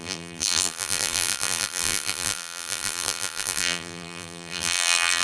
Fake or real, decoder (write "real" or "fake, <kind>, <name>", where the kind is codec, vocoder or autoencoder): fake, vocoder, BigVGAN v2